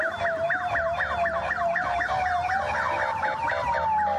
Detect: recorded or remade recorded